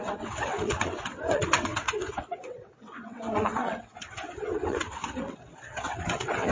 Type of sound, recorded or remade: remade